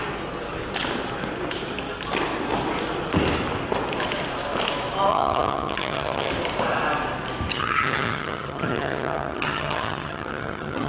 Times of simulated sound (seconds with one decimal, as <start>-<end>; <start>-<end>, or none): 5.1-6.3; 7.5-10.9

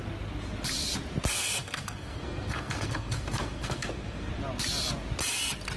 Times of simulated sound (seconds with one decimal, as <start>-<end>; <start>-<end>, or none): 1.3-4.3

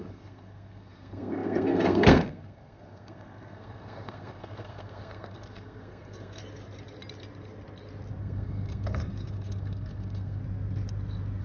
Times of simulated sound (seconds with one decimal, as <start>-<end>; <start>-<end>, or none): 0.0-6.4; 8.2-10.4

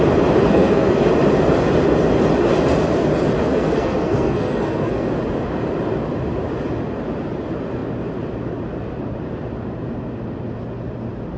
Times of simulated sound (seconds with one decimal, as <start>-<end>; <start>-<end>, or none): 0.5-1.0; 3.4-5.1

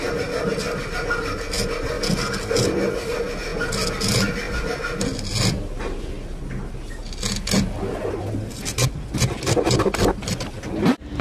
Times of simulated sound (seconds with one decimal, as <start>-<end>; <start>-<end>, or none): none